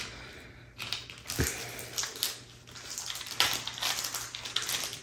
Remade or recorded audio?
recorded